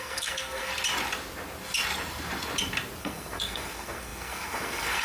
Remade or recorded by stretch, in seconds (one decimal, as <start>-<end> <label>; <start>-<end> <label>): 0.0-0.7 remade; 0.7-3.0 recorded; 3.0-5.0 remade